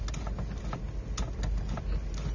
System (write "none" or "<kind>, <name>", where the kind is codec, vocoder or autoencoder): none